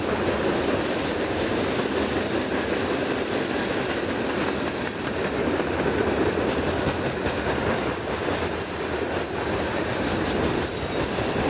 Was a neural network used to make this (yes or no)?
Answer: no